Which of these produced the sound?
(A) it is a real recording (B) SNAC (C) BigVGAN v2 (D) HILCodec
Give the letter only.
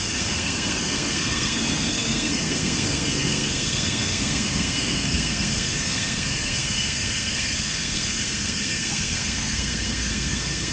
B